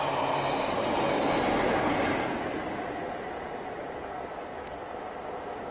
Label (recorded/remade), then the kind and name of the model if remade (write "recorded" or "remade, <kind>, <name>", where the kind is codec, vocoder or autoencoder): recorded